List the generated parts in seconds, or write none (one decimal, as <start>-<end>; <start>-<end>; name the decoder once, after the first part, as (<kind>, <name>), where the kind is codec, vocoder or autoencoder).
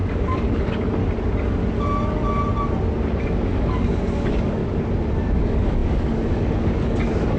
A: 0.0-1.0 (codec, DAC); 3.2-4.6; 5.2-7.4